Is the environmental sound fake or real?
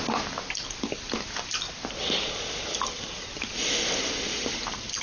real